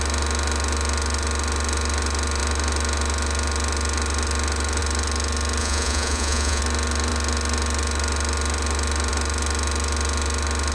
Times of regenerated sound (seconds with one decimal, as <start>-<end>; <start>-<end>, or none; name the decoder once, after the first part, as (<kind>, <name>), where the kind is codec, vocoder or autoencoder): 5.6-6.6 (vocoder, Vocos)